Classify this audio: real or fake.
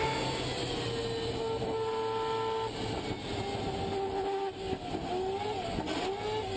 real